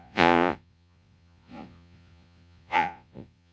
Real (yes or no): no